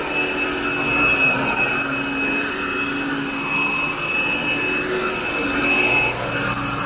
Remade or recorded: recorded